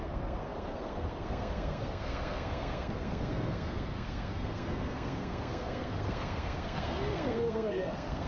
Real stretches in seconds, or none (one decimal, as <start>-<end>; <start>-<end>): none